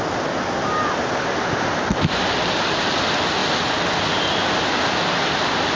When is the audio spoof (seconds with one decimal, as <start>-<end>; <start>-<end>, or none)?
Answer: none